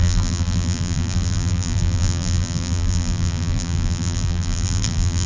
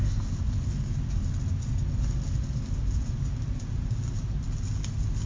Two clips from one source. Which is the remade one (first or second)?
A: first